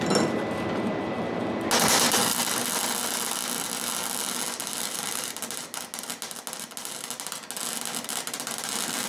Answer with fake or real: real